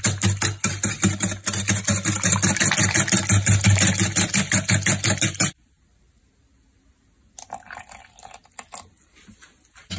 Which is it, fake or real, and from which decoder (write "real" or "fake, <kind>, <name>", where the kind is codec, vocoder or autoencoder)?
real